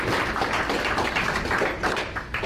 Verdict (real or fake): real